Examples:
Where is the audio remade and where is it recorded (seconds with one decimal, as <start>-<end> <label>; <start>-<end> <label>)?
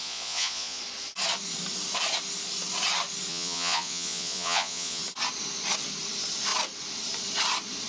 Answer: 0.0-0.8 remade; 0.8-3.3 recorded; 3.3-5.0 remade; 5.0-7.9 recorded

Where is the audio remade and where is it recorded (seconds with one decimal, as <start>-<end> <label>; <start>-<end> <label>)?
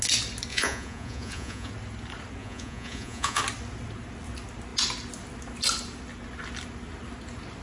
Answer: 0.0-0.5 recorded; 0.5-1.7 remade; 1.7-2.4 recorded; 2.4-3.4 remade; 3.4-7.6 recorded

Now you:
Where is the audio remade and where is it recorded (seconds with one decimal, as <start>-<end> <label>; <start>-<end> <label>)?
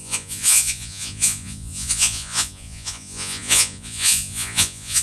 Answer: 0.0-5.0 remade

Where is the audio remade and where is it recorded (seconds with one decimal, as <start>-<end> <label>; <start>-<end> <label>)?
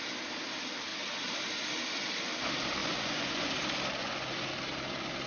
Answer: 0.0-2.8 recorded; 2.8-3.6 remade; 3.6-4.0 recorded; 4.0-4.5 remade; 4.5-5.3 recorded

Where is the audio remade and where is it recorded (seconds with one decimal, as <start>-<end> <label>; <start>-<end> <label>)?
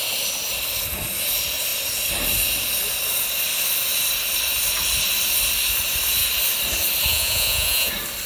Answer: 0.0-7.1 recorded; 7.1-7.9 remade; 7.9-8.3 recorded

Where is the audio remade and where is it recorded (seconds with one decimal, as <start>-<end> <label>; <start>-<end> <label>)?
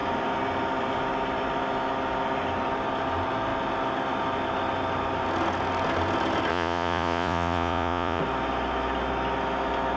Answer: 0.0-6.5 recorded; 6.5-8.2 remade; 8.2-10.0 recorded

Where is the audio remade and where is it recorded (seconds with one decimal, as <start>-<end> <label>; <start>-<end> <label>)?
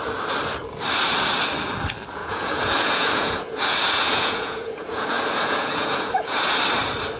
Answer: 0.0-2.2 recorded; 2.2-6.5 remade; 6.5-7.2 recorded